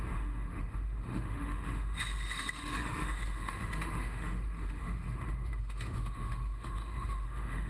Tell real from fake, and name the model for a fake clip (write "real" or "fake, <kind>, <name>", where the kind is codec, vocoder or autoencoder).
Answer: fake, autoencoder, DAC-VAE